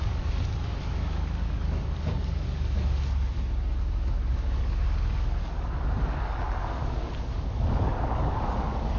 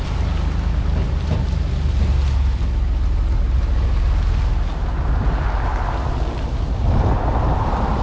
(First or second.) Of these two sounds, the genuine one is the second